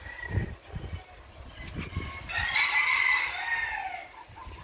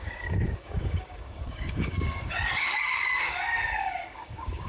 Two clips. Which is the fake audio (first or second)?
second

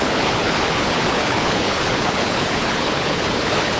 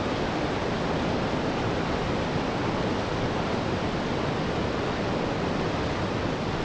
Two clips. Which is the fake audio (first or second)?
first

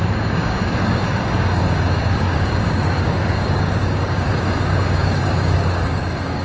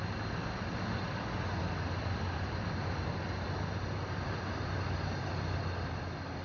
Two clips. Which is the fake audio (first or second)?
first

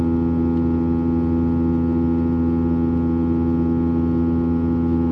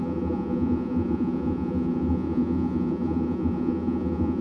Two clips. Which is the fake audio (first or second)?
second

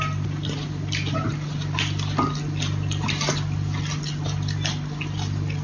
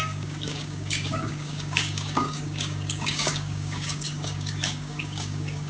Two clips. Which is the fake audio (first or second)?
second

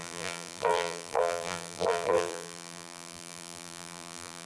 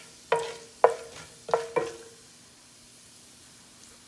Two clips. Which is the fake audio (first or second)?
first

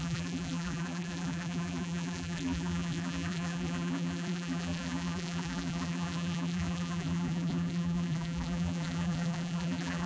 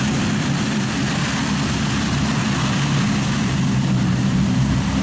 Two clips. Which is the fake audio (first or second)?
first